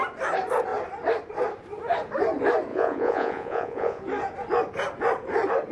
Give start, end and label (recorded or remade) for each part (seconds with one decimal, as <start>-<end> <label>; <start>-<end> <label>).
0.0-2.7 recorded; 2.7-4.0 remade; 4.0-5.7 recorded